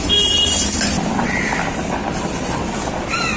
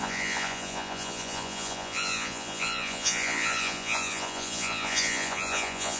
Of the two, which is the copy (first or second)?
second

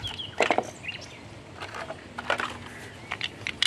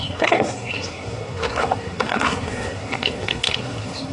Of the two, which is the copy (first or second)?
second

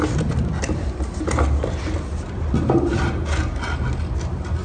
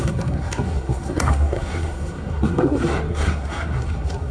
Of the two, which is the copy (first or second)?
second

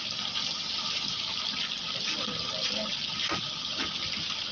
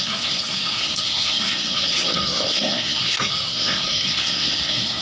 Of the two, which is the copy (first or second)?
second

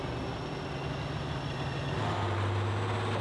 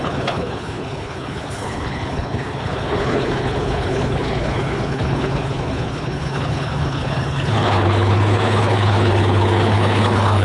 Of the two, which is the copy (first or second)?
second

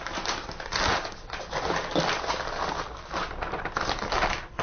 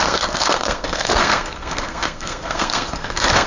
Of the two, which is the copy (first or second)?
second